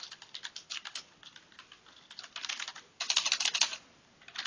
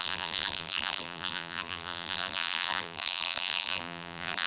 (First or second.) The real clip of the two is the first